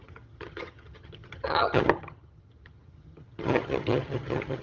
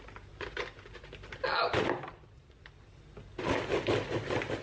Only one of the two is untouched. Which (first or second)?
second